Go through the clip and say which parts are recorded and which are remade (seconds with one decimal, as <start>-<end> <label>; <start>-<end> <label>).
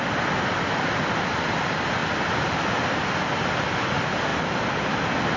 0.0-5.4 recorded